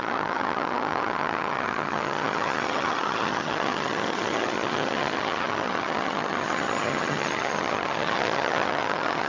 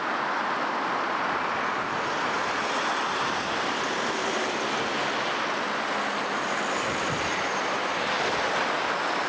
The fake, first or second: first